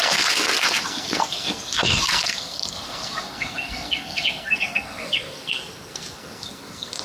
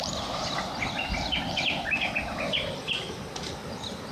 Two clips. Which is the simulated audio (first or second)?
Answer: first